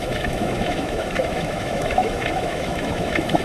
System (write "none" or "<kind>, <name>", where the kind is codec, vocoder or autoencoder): autoencoder, DAC-VAE